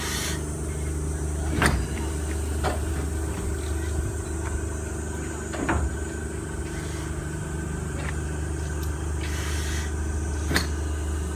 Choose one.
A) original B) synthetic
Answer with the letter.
A